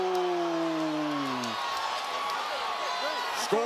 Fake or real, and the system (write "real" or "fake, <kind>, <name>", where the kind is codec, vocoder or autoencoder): real